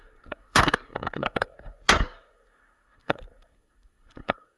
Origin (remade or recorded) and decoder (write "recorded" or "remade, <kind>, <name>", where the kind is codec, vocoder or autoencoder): remade, codec, SNAC